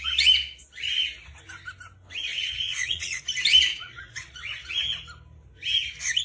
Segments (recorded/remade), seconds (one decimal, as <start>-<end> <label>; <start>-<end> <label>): 0.0-2.2 recorded; 2.2-3.3 remade; 3.3-3.7 recorded; 3.7-4.7 remade; 4.7-6.2 recorded